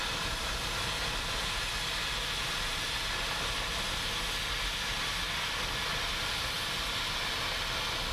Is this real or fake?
real